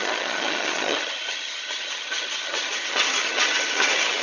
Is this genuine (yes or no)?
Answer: no